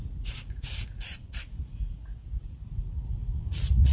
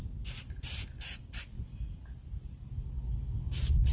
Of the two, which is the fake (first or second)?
first